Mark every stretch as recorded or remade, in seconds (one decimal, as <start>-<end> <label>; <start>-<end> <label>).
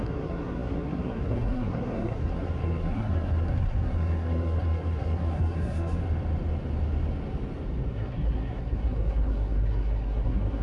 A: 0.0-6.0 remade; 6.0-7.9 recorded; 7.9-10.6 remade